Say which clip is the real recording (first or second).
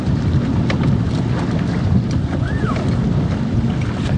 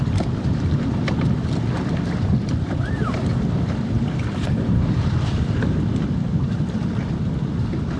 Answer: first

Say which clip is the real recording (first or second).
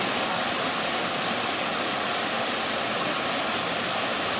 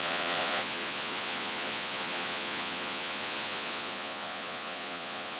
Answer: first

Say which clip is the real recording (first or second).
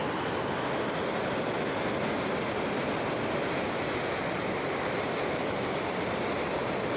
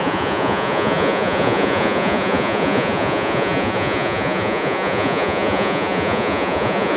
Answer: first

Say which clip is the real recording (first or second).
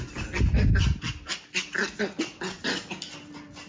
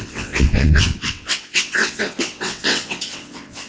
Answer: first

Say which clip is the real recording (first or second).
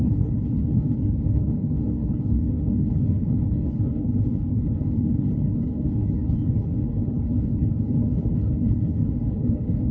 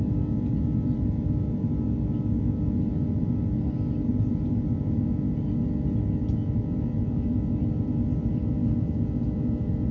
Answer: second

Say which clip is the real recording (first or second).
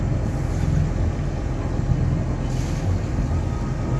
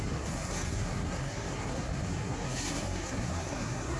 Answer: first